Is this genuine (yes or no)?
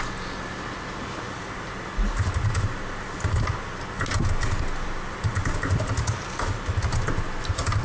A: yes